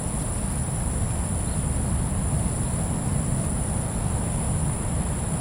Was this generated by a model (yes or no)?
no